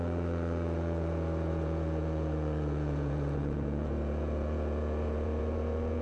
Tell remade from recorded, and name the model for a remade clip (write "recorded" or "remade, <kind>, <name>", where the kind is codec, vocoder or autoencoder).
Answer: remade, vocoder, Vocos